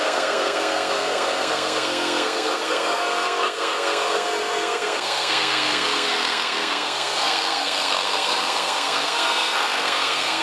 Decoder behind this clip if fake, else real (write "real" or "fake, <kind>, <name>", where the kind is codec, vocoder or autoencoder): fake, codec, SNAC